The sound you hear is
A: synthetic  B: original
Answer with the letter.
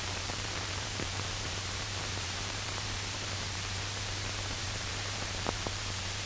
A